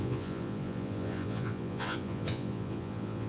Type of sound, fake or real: fake